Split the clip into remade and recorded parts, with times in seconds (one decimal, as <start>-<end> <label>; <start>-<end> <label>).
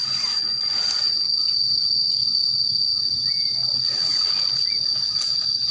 0.0-5.7 recorded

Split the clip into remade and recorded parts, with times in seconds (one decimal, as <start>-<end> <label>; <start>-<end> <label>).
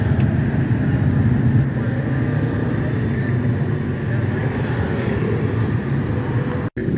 0.0-7.0 recorded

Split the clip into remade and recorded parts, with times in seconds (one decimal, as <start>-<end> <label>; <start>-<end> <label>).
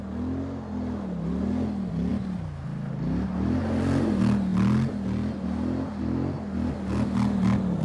0.0-7.8 recorded